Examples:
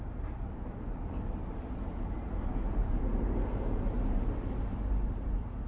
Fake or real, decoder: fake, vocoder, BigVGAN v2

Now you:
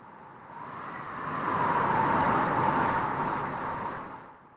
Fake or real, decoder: real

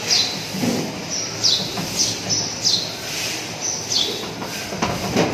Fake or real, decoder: real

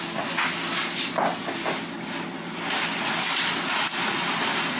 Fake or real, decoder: real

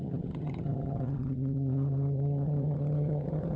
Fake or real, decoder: fake, vocoder, HiFi-GAN